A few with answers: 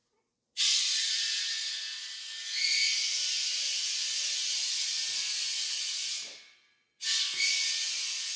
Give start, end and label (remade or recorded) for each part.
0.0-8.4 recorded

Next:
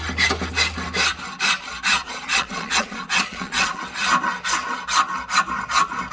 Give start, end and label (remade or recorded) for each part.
0.0-1.9 recorded; 1.9-3.8 remade; 3.8-6.1 recorded

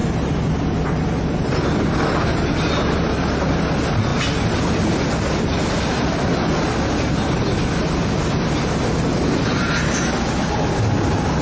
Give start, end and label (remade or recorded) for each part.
0.0-11.4 recorded

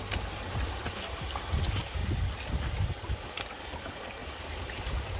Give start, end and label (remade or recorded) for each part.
0.0-4.2 recorded; 4.2-5.2 remade

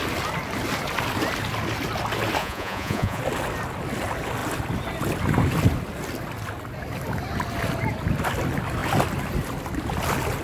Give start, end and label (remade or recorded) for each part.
0.0-2.4 recorded; 2.4-3.2 remade; 3.2-10.4 recorded

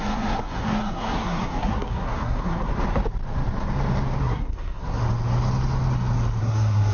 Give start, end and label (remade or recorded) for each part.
0.0-2.7 remade; 2.7-4.2 recorded; 4.2-5.0 remade; 5.0-6.4 recorded; 6.4-6.9 remade

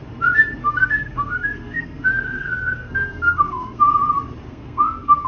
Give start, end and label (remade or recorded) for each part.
0.0-0.6 recorded; 0.6-3.8 remade; 3.8-4.5 recorded; 4.5-5.3 remade